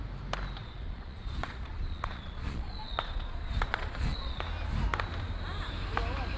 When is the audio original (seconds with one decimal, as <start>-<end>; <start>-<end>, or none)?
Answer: 0.0-0.6; 4.4-6.4